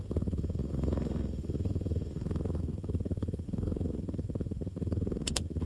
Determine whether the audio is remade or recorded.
remade